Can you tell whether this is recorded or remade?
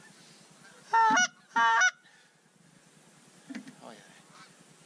recorded